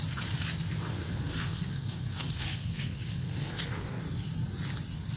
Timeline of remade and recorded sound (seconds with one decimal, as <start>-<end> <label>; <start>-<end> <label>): 0.0-0.9 recorded; 0.9-4.0 remade; 4.0-5.2 recorded